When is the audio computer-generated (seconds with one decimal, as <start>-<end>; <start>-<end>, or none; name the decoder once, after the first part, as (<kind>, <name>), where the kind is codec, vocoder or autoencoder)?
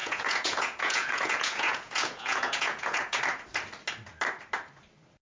0.0-3.2 (vocoder, Vocos)